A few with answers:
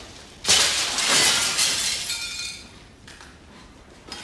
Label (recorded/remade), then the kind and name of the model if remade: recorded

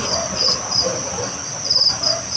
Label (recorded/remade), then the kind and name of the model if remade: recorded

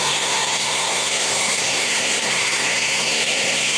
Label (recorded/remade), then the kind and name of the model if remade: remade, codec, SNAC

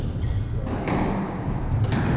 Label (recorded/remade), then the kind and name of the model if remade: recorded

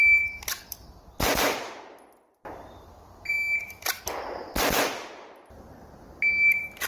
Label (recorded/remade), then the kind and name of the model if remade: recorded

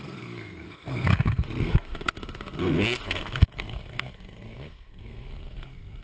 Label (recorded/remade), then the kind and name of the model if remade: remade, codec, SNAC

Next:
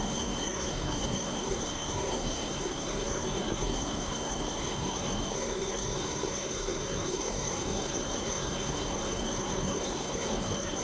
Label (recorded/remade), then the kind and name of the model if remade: remade, codec, SNAC